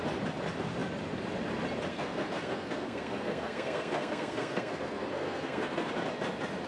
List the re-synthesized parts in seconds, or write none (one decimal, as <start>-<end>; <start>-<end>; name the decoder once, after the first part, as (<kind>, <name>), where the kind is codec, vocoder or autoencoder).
1.9-5.9 (codec, SNAC)